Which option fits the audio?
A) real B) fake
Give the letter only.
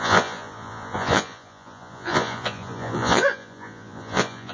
B